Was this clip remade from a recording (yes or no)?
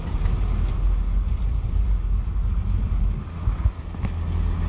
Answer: no